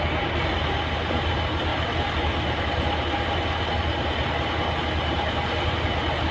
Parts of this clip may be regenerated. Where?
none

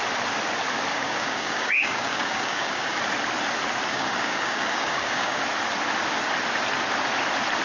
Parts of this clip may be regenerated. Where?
0.9-3.0 (codec, DAC); 3.9-5.4

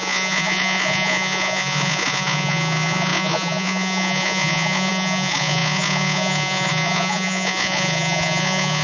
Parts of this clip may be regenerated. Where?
0.0-8.8 (vocoder, Vocos)

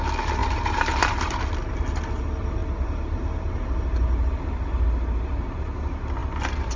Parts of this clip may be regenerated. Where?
0.4-1.4 (vocoder, BigVGAN v2); 2.6-3.5